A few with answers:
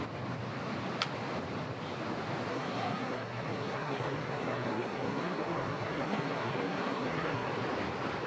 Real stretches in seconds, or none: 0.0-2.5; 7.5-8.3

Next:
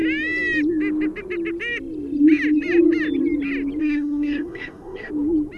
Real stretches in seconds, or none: 0.0-3.8; 5.1-5.6